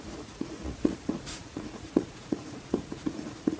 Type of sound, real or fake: fake